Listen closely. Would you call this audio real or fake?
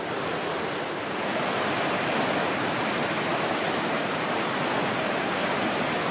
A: real